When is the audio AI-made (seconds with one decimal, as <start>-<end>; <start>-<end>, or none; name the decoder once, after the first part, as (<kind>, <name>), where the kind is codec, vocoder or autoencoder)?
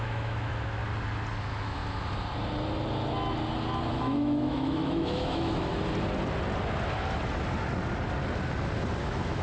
0.0-0.8 (autoencoder, DAC-VAE); 1.4-1.8; 3.9-5.7; 9.0-9.4